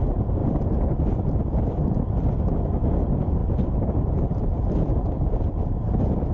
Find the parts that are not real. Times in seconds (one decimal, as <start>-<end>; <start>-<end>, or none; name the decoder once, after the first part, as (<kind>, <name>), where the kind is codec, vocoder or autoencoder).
0.4-1.3 (vocoder, BigVGAN v2); 3.4-6.3